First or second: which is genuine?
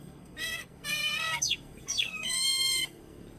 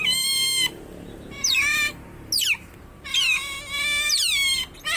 second